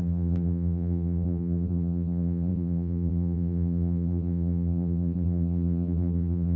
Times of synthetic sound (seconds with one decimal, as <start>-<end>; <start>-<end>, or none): 0.0-6.6